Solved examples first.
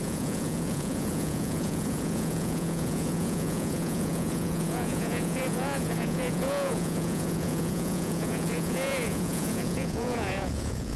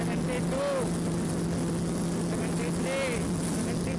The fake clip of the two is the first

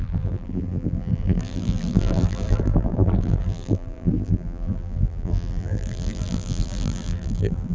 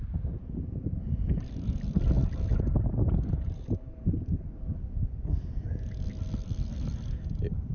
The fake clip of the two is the first